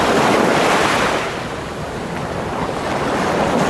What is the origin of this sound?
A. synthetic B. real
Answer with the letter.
B